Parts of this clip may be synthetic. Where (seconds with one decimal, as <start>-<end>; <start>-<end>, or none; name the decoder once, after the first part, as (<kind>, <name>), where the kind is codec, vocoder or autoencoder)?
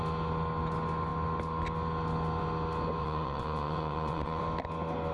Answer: 3.0-4.4 (vocoder, Vocos)